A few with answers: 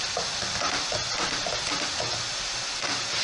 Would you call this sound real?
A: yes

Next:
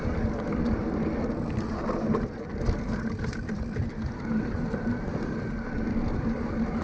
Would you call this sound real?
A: yes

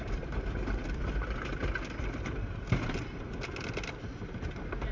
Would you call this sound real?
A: yes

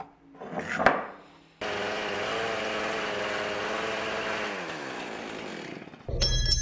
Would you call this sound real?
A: yes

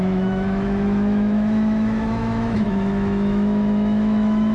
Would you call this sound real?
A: no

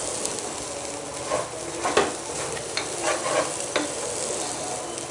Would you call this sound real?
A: yes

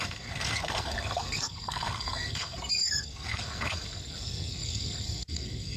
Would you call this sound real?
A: no